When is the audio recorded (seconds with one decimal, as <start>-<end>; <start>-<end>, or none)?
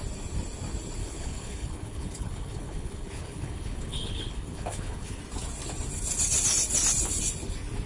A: 0.0-1.0; 5.2-7.9